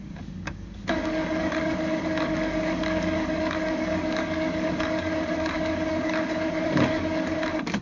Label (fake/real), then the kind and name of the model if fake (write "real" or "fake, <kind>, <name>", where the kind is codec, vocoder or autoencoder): fake, codec, DAC